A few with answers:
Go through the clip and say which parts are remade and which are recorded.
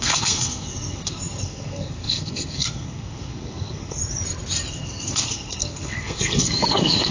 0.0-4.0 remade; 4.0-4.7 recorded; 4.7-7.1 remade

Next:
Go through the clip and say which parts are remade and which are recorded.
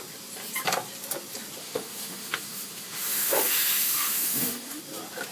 0.0-1.6 recorded; 1.6-4.8 remade; 4.8-5.3 recorded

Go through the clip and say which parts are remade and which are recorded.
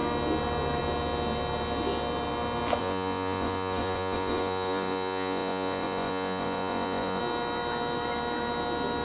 0.0-2.8 recorded; 2.8-7.2 remade; 7.2-9.0 recorded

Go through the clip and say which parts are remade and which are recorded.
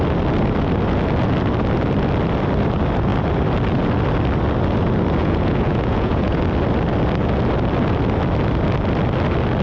0.0-5.2 recorded; 5.2-6.4 remade; 6.4-9.6 recorded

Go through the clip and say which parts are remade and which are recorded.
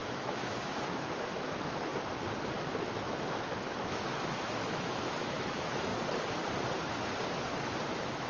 0.0-1.9 remade; 1.9-2.8 recorded; 2.8-5.9 remade; 5.9-7.9 recorded; 7.9-8.3 remade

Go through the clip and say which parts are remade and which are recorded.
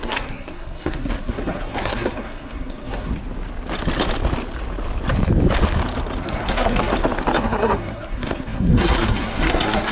0.0-3.1 remade; 3.1-6.2 recorded; 6.2-6.9 remade; 6.9-7.4 recorded; 7.4-9.9 remade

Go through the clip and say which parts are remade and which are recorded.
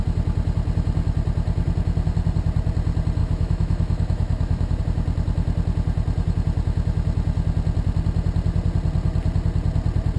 0.0-3.2 recorded; 3.2-4.8 remade; 4.8-10.2 recorded